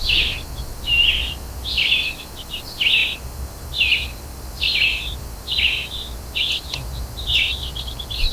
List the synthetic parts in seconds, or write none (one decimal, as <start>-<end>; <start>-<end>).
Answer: none